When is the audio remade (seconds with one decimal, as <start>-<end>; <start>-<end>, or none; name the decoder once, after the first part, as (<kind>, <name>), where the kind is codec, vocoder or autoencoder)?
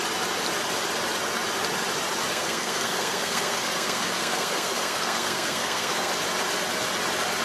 2.3-6.1 (codec, SNAC)